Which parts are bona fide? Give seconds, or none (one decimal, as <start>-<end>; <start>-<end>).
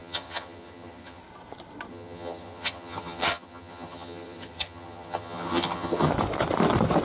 1.2-1.9; 6.1-7.0